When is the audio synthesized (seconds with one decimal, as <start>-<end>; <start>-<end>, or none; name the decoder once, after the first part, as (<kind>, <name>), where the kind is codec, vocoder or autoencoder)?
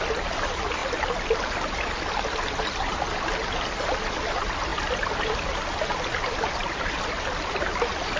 none